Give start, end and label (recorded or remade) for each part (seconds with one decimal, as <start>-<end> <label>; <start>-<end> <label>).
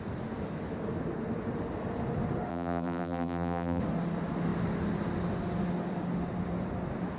0.0-2.5 recorded; 2.5-3.8 remade; 3.8-7.2 recorded